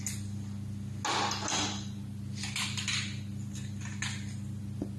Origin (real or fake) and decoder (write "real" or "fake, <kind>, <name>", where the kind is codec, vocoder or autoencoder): real